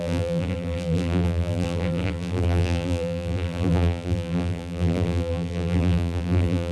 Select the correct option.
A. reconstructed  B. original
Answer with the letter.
A